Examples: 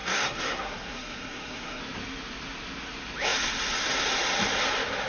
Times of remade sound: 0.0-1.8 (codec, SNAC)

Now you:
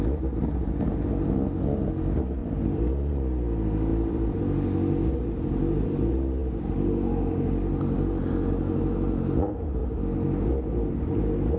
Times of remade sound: 2.4-3.1 (vocoder, BigVGAN v2); 3.9-4.4

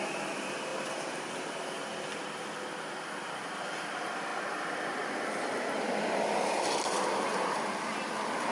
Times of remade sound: none

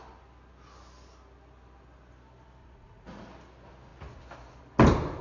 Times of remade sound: 2.6-3.3 (vocoder, Vocos)

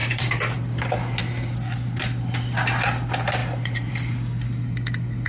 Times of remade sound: 0.0-0.6 (vocoder, BigVGAN v2); 3.4-3.9